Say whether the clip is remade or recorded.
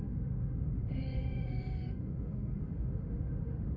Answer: remade